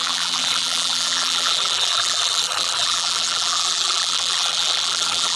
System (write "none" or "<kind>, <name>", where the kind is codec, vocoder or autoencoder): vocoder, BigVGAN v2